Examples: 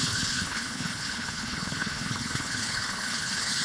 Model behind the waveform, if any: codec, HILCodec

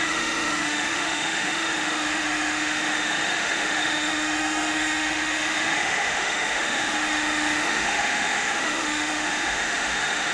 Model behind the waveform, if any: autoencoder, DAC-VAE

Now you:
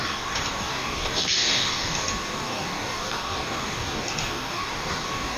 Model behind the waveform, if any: codec, DAC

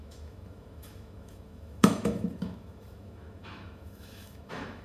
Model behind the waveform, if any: autoencoder, DAC-VAE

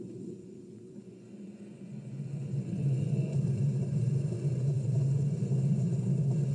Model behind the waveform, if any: vocoder, Vocos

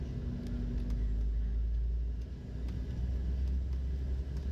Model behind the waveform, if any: none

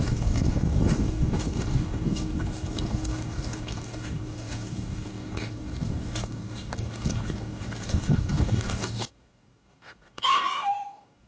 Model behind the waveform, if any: codec, DAC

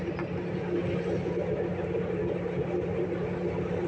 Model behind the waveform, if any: none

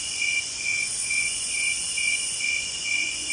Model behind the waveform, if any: vocoder, Vocos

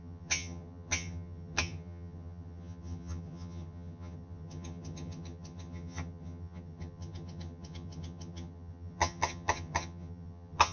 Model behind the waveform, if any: vocoder, HiFi-GAN